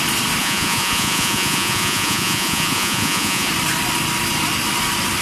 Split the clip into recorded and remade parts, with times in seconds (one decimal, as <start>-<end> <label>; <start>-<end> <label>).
0.0-0.4 recorded; 0.4-3.5 remade; 3.5-5.2 recorded